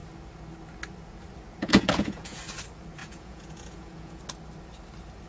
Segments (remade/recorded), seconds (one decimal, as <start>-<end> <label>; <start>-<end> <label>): 0.0-1.6 recorded; 1.6-2.4 remade; 2.4-3.0 recorded; 3.0-4.2 remade; 4.2-5.3 recorded